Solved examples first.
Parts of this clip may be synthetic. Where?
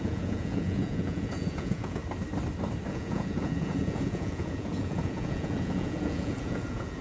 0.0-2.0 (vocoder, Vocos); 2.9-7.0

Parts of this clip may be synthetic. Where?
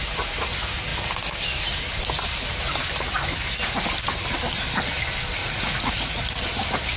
5.4-6.2 (vocoder, Vocos)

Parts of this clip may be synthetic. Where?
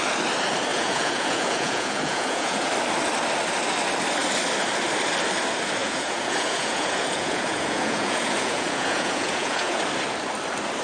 0.7-2.7 (vocoder, Vocos); 5.8-9.8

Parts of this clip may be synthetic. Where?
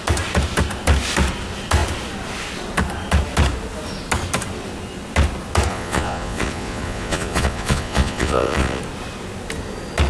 5.7-8.8 (vocoder, Vocos)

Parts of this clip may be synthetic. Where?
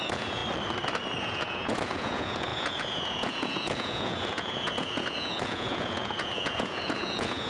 0.0-0.4 (vocoder, Vocos); 1.2-7.5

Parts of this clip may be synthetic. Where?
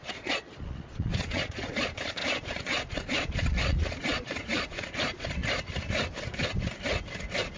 0.0-5.4 (vocoder, Vocos)